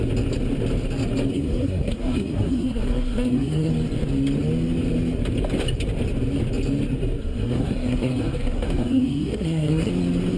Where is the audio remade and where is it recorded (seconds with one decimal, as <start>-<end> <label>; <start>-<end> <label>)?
0.0-1.3 recorded; 1.3-3.7 remade; 3.7-7.2 recorded; 7.2-9.9 remade; 9.9-10.4 recorded

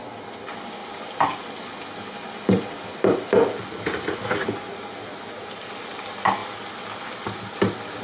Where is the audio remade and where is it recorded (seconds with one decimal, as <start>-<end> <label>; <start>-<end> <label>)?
0.0-8.0 recorded

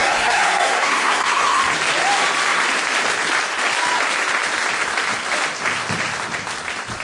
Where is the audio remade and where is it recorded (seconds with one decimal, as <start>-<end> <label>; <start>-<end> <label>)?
0.0-1.6 remade; 1.6-7.0 recorded